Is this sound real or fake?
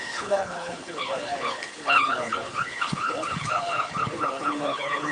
fake